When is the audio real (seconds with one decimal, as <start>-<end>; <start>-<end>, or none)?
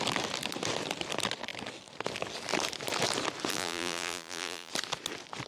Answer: 0.0-3.5; 4.7-5.5